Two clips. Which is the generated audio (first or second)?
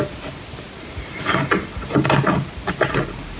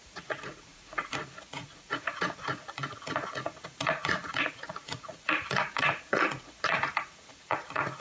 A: second